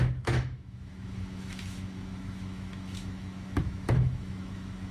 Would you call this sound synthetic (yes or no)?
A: yes